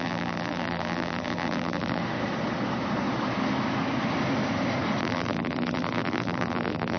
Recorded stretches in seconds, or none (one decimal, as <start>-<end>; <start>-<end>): 2.0-5.0